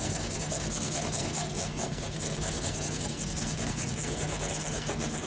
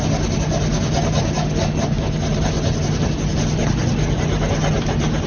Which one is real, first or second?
second